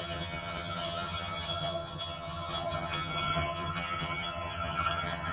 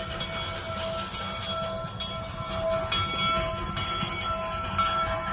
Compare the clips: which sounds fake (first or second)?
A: first